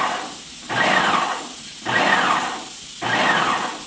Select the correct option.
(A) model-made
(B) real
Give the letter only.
B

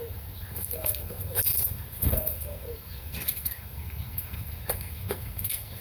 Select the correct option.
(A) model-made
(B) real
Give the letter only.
A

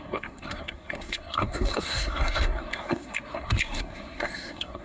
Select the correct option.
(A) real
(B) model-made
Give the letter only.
B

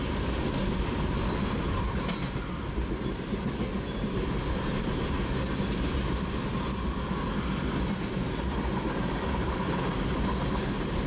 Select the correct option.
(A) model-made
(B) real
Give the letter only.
B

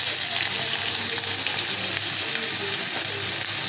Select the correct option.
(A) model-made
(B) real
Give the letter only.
B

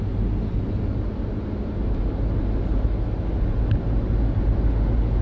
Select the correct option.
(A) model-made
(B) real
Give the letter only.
B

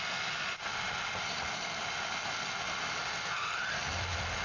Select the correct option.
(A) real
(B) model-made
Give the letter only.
A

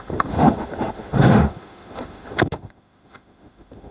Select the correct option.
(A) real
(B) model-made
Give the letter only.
B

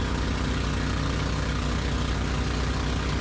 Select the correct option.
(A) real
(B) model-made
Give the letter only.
A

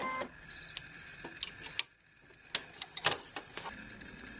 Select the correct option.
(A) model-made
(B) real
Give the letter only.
B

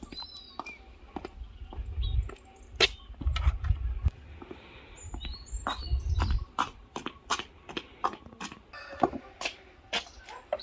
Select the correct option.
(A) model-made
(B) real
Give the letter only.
B